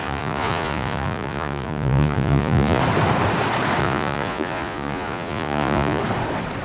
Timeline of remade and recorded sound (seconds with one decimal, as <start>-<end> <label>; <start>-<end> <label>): 0.0-2.8 remade; 2.8-3.8 recorded; 3.8-6.0 remade; 6.0-6.6 recorded